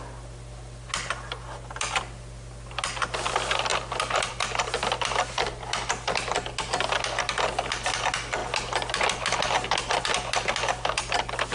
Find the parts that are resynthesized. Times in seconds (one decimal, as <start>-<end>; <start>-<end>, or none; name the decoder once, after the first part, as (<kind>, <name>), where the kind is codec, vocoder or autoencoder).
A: none